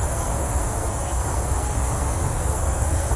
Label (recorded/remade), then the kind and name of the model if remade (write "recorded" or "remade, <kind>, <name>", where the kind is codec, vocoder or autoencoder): remade, codec, SNAC